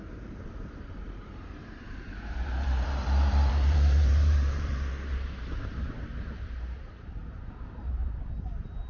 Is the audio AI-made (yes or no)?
yes